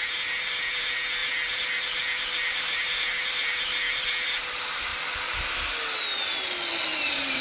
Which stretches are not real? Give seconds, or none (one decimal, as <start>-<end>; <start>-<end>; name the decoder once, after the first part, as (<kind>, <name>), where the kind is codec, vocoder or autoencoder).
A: 0.0-4.9 (vocoder, BigVGAN v2); 7.0-7.4